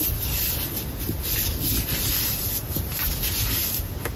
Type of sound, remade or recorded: recorded